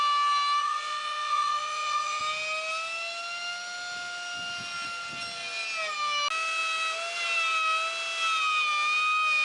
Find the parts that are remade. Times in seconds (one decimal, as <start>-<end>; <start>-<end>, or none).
0.6-2.2